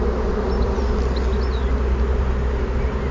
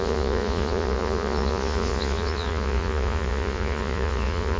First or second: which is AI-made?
second